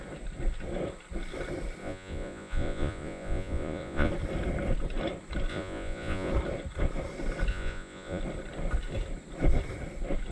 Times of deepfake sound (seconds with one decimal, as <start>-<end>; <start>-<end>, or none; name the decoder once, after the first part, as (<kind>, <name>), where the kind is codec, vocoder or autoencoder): 1.8-4.1 (vocoder, Vocos); 5.5-6.3; 7.5-8.2